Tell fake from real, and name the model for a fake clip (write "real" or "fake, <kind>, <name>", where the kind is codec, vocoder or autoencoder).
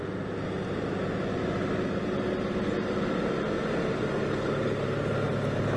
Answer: real